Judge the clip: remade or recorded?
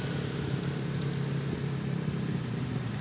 recorded